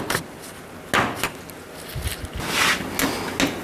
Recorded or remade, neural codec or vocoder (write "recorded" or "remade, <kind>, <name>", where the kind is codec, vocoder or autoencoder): recorded